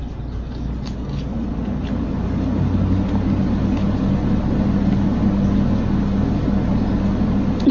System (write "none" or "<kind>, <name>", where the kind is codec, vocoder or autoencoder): none